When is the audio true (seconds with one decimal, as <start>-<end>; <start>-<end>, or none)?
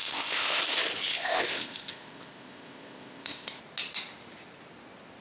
0.6-1.1; 3.6-5.2